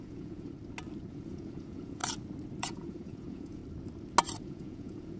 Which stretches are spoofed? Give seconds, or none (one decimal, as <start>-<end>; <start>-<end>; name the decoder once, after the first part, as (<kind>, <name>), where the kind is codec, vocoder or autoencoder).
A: 0.0-0.5 (vocoder, Vocos); 1.1-2.0; 2.6-3.6; 4.4-5.2